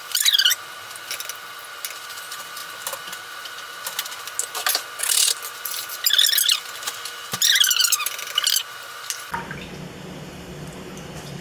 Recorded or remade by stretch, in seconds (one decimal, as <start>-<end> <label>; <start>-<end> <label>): 0.0-0.5 remade; 0.5-2.1 recorded; 2.1-2.6 remade; 2.6-7.8 recorded; 7.8-8.6 remade; 8.6-10.3 recorded; 10.3-11.4 remade